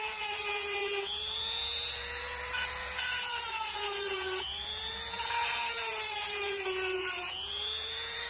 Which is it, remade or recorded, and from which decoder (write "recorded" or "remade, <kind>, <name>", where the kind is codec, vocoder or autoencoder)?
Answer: remade, vocoder, Vocos